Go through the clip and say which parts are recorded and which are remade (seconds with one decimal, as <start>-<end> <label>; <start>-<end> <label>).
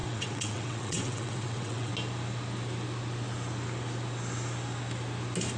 0.0-1.9 remade; 1.9-5.6 recorded